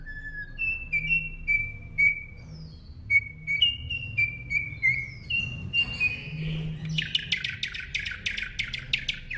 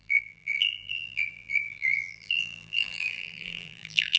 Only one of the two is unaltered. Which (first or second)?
first